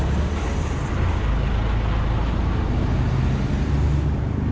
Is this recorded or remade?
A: recorded